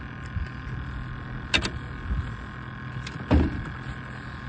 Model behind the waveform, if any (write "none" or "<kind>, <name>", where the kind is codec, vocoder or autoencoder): none